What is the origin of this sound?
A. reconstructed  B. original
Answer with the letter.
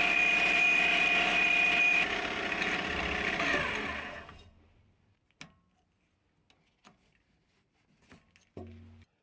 B